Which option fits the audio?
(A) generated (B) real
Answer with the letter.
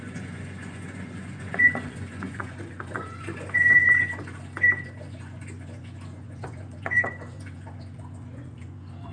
A